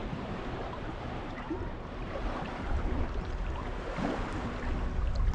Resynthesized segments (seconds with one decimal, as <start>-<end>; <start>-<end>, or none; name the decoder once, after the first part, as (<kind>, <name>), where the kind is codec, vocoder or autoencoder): 0.0-3.2 (vocoder, BigVGAN v2)